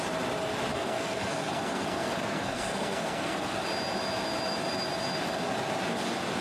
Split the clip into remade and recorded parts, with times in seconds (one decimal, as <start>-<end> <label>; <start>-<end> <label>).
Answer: 0.0-0.7 recorded; 0.7-3.6 remade; 3.6-6.4 recorded